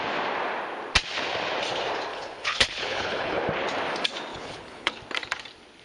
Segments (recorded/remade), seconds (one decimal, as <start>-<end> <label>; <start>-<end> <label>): 0.0-2.1 recorded; 2.1-3.4 remade; 3.4-4.3 recorded; 4.3-5.0 remade; 5.0-5.8 recorded

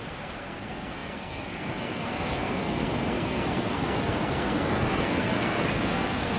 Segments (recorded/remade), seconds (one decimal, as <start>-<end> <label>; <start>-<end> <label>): 0.0-6.4 remade

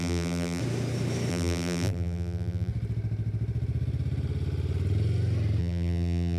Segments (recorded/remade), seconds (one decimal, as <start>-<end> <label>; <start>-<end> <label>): 0.0-0.6 remade; 0.6-1.3 recorded; 1.3-2.7 remade; 2.7-5.6 recorded; 5.6-6.4 remade

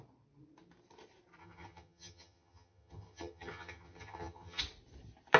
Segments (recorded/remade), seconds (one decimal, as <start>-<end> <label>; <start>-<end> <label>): 0.0-1.4 recorded; 1.4-4.6 remade; 4.6-5.4 recorded

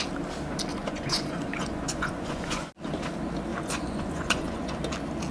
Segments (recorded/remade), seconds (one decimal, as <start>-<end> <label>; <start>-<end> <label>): 0.0-0.7 recorded; 0.7-2.7 remade; 2.7-3.5 recorded; 3.5-4.8 remade; 4.8-5.3 recorded

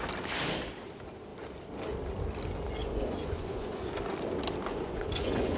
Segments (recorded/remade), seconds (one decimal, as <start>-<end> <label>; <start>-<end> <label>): 0.0-2.8 recorded; 2.8-4.0 remade; 4.0-4.7 recorded; 4.7-5.6 remade

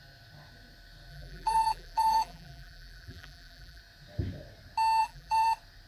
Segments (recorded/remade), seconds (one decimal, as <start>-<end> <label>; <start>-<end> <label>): 0.0-1.1 recorded; 1.1-3.8 remade; 3.8-5.0 recorded; 5.0-5.5 remade; 5.5-5.9 recorded

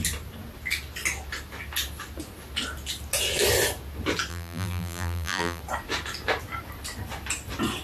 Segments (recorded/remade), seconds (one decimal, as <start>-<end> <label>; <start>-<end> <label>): 0.0-4.3 recorded; 4.3-5.6 remade; 5.6-7.8 recorded